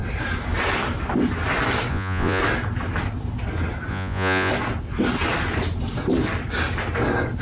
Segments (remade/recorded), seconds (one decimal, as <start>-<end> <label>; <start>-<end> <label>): 0.0-1.9 recorded; 1.9-2.4 remade; 2.4-3.9 recorded; 3.9-4.5 remade; 4.5-7.4 recorded